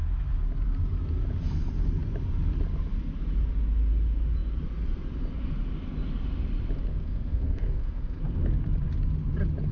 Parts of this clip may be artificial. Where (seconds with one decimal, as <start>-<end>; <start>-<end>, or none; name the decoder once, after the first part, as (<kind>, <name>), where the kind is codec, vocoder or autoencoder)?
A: 6.9-8.2 (codec, SNAC)